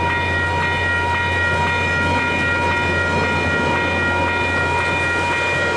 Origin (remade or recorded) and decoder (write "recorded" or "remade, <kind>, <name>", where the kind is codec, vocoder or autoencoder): recorded